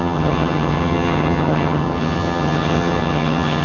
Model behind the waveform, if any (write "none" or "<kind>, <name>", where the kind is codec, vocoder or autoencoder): vocoder, HiFi-GAN